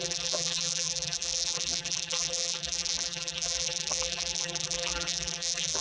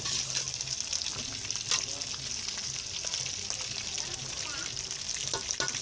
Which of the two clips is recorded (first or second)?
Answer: second